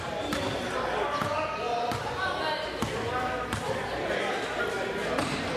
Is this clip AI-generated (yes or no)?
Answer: no